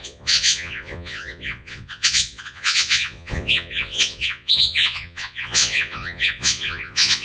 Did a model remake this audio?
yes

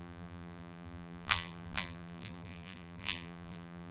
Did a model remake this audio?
yes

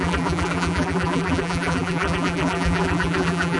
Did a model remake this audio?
yes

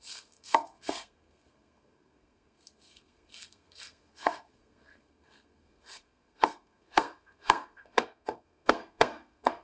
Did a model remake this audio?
yes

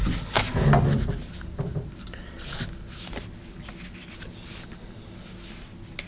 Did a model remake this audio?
no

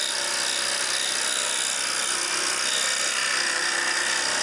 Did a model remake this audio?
no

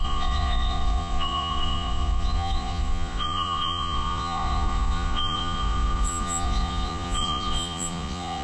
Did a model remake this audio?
yes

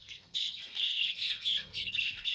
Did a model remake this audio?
yes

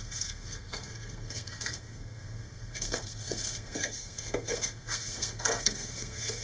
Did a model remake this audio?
yes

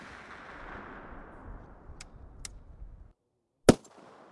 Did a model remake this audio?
no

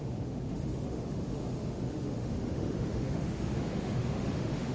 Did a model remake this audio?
yes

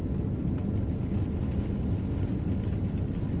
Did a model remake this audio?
no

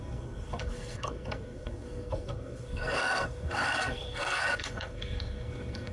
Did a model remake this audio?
yes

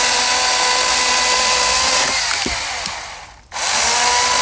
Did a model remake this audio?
no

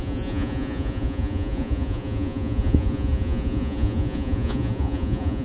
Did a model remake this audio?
yes